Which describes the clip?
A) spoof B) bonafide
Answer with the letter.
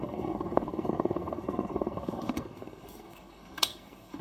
A